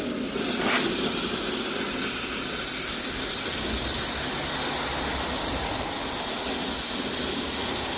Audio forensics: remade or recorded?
recorded